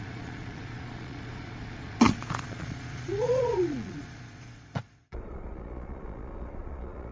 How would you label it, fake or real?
fake